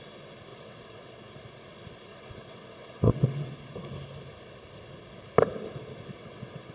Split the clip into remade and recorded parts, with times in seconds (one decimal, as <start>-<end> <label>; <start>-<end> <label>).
0.0-0.5 recorded; 0.5-1.2 remade; 1.2-2.1 recorded; 2.1-3.5 remade; 3.5-6.2 recorded; 6.2-6.7 remade